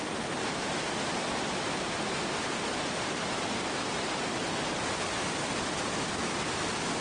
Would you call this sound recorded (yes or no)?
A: yes